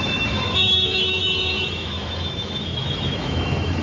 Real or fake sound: fake